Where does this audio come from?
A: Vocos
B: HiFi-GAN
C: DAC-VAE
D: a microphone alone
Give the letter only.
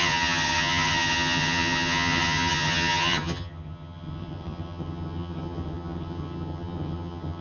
B